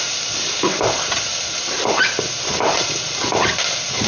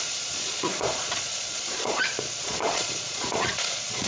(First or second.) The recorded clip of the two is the first